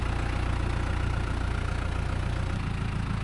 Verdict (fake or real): real